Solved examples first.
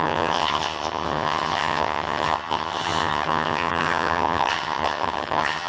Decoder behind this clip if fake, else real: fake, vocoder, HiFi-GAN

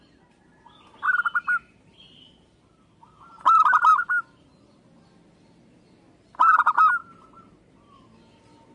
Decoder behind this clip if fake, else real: real